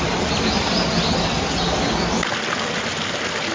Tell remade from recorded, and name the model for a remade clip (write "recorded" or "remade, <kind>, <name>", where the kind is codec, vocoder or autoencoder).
recorded